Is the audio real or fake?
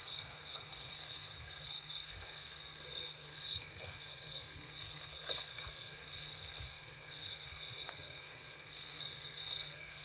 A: fake